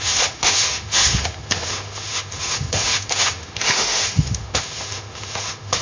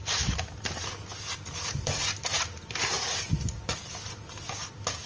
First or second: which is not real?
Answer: first